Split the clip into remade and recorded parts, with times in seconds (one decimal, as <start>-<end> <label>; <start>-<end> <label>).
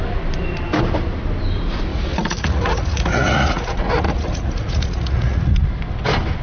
0.0-1.9 recorded; 1.9-5.7 remade; 5.7-6.4 recorded